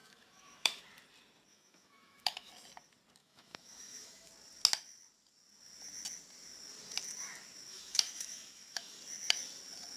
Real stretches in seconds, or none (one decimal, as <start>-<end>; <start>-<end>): 0.8-1.5; 2.5-3.2; 4.3-7.7; 9.0-10.0